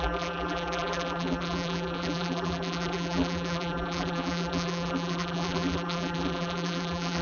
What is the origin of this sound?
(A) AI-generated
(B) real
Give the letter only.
A